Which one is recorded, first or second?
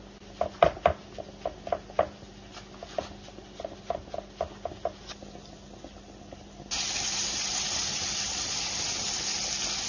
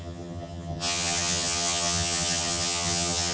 first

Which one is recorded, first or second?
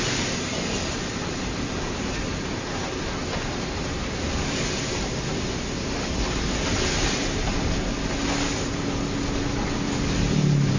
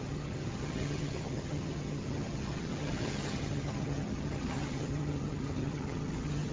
first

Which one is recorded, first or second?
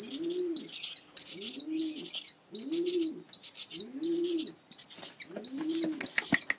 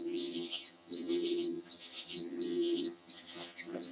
first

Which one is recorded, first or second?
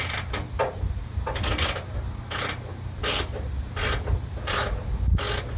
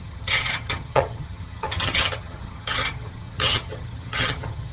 first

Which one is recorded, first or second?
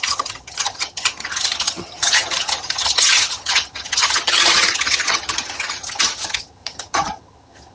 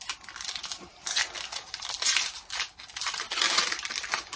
second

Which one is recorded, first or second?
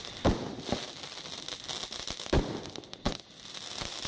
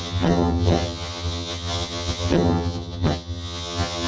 first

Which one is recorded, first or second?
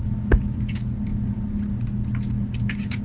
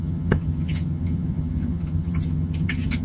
first